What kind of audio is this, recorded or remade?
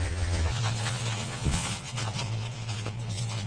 remade